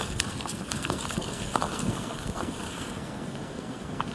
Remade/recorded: remade